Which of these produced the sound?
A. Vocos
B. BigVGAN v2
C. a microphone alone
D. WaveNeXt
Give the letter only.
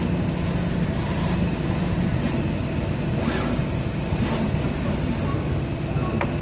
C